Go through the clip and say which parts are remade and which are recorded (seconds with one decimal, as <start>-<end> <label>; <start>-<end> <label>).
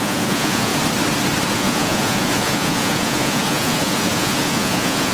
0.0-0.7 remade; 0.7-1.5 recorded; 1.5-5.1 remade